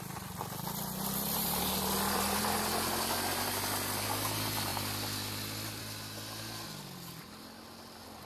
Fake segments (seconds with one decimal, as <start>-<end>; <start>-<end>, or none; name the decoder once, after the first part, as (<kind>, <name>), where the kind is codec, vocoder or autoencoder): none